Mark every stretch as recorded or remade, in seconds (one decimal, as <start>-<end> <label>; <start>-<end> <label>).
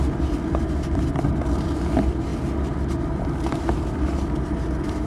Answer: 0.0-2.3 remade; 2.3-5.1 recorded